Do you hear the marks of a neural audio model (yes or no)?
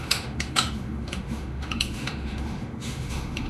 yes